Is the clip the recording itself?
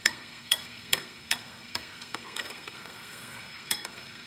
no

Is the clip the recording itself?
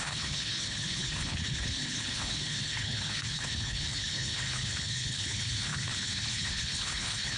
no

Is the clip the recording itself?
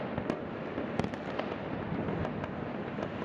yes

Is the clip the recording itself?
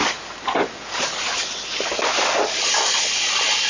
yes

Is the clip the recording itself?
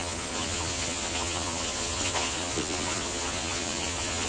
no